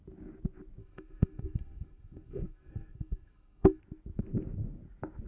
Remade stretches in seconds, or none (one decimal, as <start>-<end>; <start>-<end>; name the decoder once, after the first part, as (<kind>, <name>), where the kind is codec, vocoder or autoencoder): 0.8-3.8 (codec, SNAC)